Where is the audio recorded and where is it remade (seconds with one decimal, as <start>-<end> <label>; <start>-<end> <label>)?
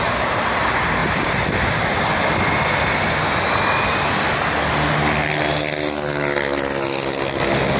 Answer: 0.0-1.0 recorded; 1.0-2.0 remade; 2.0-7.8 recorded